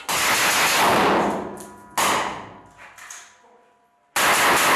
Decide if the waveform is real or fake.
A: real